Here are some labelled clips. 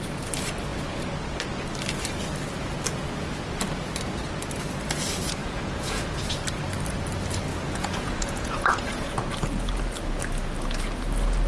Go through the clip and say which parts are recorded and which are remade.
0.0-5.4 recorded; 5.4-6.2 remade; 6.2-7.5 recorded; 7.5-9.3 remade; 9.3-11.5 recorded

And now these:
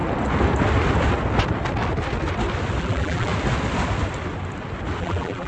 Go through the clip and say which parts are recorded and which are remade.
0.0-2.8 recorded; 2.8-3.3 remade; 3.3-5.0 recorded; 5.0-5.5 remade

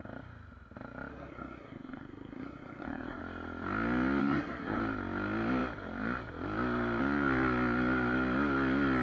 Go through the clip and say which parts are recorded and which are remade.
0.0-1.1 recorded; 1.1-3.2 remade; 3.2-4.2 recorded; 4.2-4.8 remade; 4.8-9.0 recorded

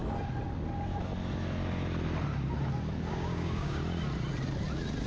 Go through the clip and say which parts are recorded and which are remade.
0.0-3.1 recorded; 3.1-3.8 remade; 3.8-5.1 recorded

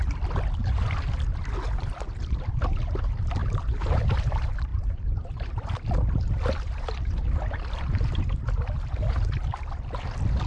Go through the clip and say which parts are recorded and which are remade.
0.0-3.4 recorded; 3.4-4.0 remade; 4.0-4.7 recorded; 4.7-5.3 remade; 5.3-10.5 recorded